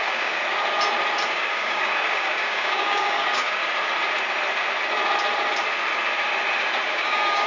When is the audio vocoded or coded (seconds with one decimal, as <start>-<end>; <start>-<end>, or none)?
0.0-0.4; 1.3-3.6; 6.9-7.5